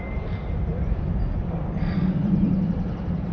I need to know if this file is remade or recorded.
remade